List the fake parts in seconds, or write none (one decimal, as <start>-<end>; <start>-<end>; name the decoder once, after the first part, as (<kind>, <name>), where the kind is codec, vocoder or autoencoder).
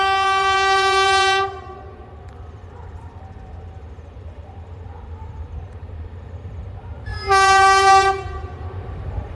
0.0-9.4 (vocoder, BigVGAN v2)